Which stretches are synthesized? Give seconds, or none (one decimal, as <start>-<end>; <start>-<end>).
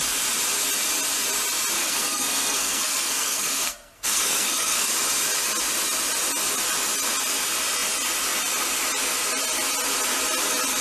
1.8-4.9